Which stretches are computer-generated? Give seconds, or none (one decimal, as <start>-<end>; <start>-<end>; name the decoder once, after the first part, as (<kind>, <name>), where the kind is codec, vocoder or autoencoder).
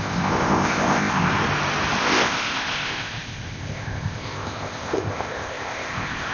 0.0-1.3 (codec, ZipCodec); 2.0-6.3